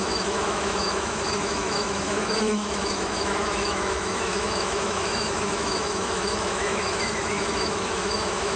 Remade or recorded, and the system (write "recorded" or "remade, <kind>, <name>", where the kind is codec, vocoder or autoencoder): remade, autoencoder, DAC-VAE